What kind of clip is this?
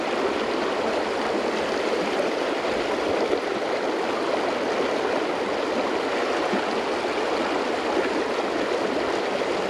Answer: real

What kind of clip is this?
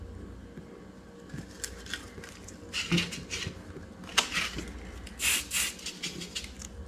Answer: real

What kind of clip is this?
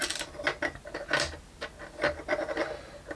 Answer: real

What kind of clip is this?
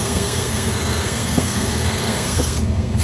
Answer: fake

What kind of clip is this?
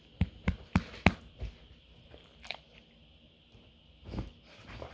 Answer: real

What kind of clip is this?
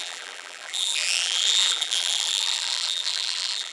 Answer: fake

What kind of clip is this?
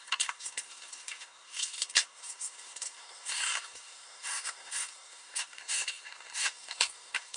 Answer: fake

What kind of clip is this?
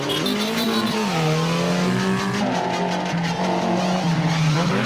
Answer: real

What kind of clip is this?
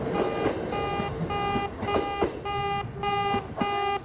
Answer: real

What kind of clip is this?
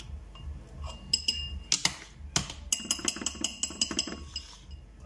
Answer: real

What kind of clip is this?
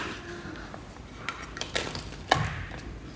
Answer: real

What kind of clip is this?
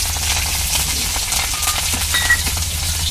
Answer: real